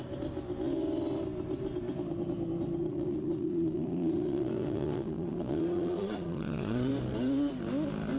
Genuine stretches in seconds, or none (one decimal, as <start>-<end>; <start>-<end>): 0.0-2.8; 6.9-8.2